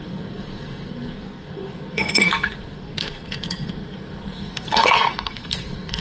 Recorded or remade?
remade